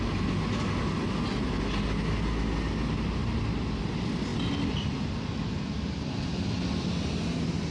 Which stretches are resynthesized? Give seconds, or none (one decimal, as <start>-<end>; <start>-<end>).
none